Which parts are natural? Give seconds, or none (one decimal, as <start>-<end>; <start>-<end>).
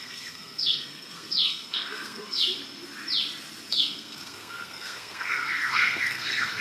2.6-3.7